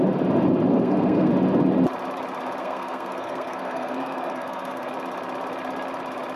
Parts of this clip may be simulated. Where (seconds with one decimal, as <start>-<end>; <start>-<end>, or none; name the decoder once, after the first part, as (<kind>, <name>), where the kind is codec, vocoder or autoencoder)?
0.7-1.3 (codec, SNAC); 2.6-4.9